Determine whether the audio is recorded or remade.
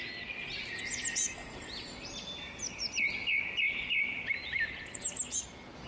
recorded